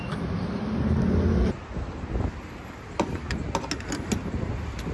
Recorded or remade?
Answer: recorded